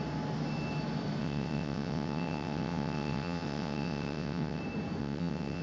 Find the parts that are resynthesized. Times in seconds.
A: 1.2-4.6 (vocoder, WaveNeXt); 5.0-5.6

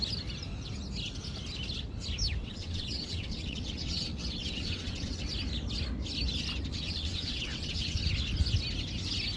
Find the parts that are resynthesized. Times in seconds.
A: 2.4-5.3 (vocoder, WaveNeXt); 6.7-8.0

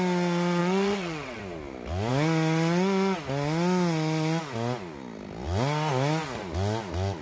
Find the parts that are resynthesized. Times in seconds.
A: 0.6-1.4 (vocoder, WaveNeXt)